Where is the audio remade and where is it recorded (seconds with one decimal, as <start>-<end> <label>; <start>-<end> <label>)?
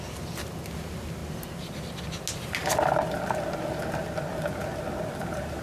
0.0-5.6 recorded